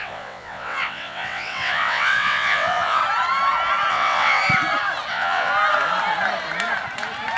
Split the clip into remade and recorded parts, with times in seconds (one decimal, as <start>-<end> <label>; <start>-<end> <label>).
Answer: 0.0-3.0 remade; 3.0-3.9 recorded; 3.9-4.4 remade; 4.4-5.1 recorded; 5.1-5.5 remade; 5.5-7.4 recorded